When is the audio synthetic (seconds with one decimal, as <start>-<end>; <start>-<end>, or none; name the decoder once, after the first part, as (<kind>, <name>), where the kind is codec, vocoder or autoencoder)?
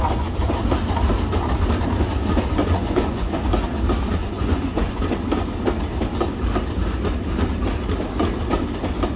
2.6-3.4 (vocoder, Vocos); 4.2-5.0